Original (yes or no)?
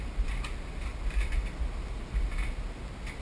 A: yes